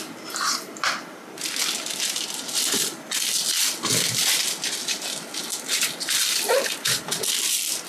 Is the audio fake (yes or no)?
no